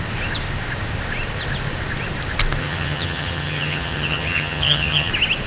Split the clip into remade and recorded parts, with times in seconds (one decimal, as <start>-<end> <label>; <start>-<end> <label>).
0.0-2.6 recorded; 2.6-5.1 remade; 5.1-5.5 recorded